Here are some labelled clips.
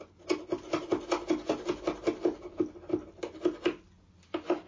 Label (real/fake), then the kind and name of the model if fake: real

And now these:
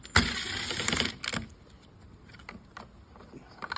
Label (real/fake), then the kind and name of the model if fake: real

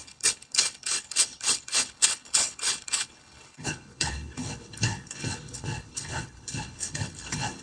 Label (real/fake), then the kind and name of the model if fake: fake, codec, HILCodec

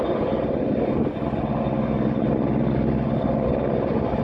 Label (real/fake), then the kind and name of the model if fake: real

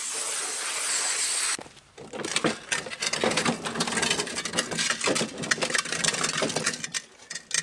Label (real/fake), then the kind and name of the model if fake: real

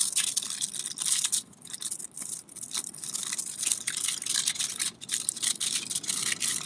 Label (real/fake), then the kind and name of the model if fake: real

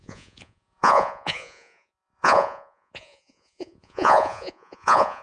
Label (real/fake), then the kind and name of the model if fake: fake, vocoder, Vocos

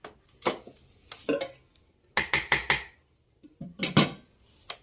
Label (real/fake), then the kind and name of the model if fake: real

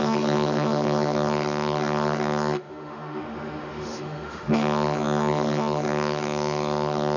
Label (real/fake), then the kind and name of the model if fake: fake, autoencoder, DAC-VAE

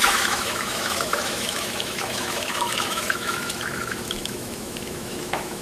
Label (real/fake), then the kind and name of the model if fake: fake, autoencoder, DAC-VAE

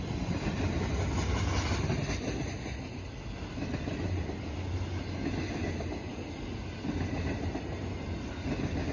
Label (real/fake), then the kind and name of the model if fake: real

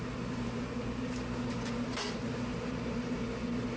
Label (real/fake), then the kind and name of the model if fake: real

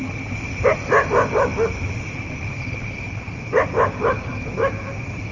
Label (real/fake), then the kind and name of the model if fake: real